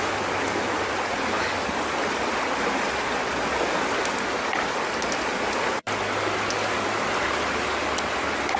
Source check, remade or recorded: recorded